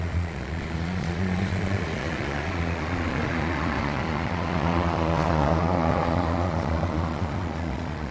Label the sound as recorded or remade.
remade